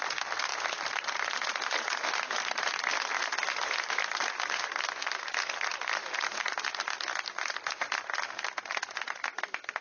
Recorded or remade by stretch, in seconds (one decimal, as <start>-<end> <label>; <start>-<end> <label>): 0.0-9.8 recorded